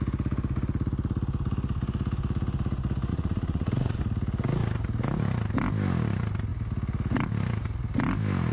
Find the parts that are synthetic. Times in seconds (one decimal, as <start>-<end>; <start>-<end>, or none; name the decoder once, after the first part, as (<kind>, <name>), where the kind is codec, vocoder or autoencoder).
3.1-4.0 (vocoder, Vocos)